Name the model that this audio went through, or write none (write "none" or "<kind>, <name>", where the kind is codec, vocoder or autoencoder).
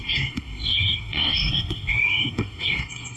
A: codec, SNAC